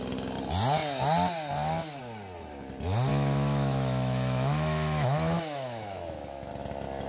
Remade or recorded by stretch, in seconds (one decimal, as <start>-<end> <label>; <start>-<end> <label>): 0.0-3.1 recorded; 3.1-6.5 remade; 6.5-7.1 recorded